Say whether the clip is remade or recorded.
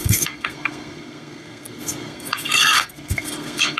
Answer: remade